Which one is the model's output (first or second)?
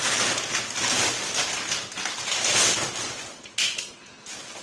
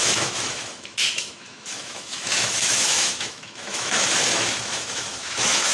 second